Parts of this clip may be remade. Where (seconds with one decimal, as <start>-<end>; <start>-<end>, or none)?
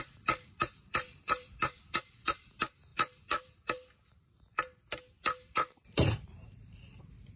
0.0-7.4